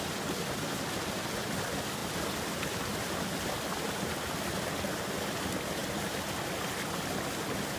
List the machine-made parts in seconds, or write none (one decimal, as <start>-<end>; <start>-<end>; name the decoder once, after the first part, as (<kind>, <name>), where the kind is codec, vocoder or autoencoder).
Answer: none